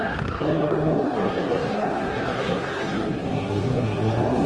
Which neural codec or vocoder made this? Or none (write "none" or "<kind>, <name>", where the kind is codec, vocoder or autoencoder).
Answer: codec, SNAC